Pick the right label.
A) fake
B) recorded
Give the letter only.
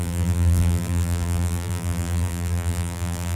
A